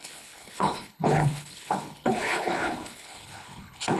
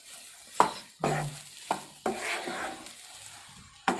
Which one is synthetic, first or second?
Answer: first